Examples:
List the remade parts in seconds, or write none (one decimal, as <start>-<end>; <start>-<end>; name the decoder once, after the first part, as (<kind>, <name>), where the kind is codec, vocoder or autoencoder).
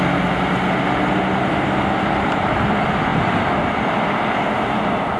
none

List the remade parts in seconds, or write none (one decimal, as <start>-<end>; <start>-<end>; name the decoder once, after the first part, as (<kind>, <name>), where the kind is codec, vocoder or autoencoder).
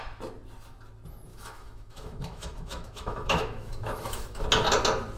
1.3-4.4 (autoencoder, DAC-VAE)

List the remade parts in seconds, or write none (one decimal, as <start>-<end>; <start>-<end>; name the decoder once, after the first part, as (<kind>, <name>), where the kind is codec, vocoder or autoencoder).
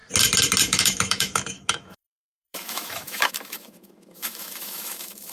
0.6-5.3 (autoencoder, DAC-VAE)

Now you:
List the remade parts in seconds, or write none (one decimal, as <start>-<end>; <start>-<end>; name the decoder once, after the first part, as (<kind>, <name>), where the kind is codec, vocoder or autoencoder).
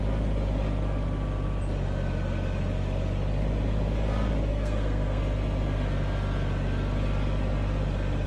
4.5-5.2 (codec, SNAC)